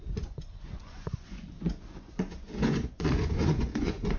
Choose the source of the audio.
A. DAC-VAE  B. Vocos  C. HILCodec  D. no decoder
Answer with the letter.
B